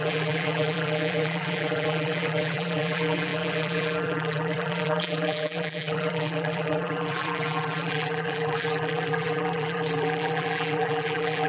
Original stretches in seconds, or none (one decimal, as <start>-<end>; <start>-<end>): none